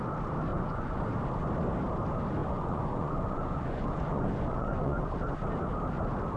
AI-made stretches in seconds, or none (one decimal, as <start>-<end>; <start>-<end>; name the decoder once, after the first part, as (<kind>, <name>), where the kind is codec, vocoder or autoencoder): 0.5-1.0 (vocoder, Vocos); 2.4-5.0